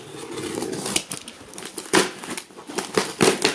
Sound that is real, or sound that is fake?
real